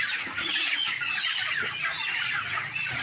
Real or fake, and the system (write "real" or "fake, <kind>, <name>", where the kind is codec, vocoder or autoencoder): fake, vocoder, Vocos